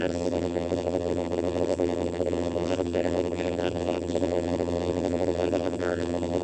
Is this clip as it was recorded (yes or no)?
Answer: no